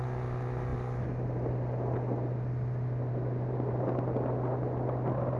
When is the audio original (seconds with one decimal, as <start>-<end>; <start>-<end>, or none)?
0.0-5.4